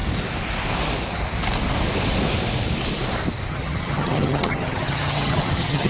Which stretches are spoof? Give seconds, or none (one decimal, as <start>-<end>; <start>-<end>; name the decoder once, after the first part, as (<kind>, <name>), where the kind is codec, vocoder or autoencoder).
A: 3.5-5.9 (vocoder, HiFi-GAN)